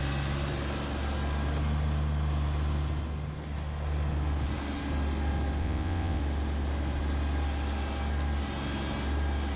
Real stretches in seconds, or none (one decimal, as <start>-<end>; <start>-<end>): 0.0-5.6; 6.2-9.6